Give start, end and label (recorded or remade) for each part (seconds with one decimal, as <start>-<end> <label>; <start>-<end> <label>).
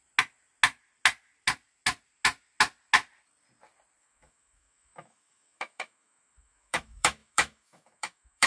0.0-4.0 recorded; 4.0-8.5 remade